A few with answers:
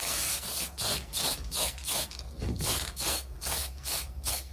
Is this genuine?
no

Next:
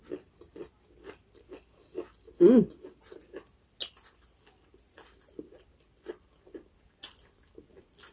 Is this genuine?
yes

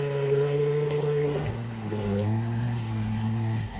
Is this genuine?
no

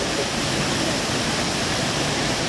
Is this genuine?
yes